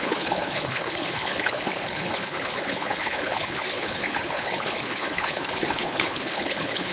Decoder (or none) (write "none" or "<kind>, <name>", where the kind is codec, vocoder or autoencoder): codec, HILCodec